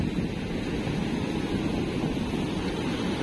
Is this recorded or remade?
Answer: recorded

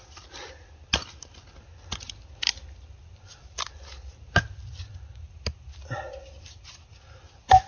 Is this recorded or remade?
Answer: recorded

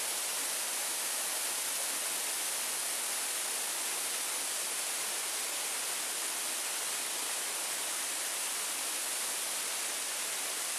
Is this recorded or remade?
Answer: recorded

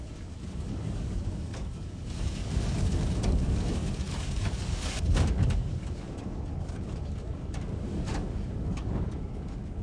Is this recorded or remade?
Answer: remade